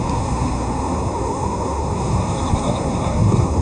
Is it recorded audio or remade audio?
remade